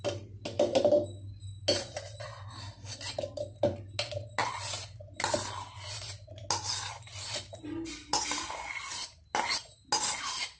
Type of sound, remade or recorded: recorded